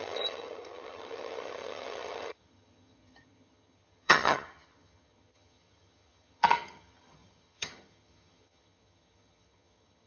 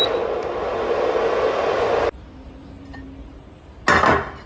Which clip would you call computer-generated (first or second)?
first